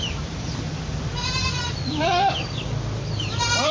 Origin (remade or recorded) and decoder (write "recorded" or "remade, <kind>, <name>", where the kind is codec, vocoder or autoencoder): recorded